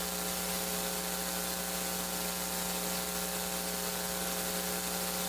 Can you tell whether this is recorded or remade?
recorded